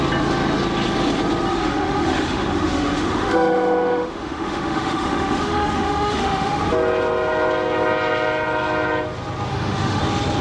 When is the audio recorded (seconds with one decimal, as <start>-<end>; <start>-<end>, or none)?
0.0-1.5; 6.6-9.5; 10.0-10.4